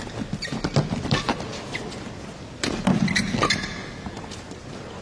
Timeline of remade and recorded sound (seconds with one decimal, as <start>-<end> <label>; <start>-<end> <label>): 0.0-5.0 recorded